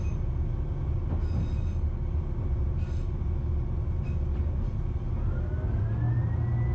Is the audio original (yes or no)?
yes